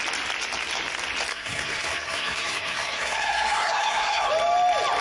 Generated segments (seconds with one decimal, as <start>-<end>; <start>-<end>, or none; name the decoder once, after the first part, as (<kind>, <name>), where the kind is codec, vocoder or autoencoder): 1.3-4.3 (codec, SNAC)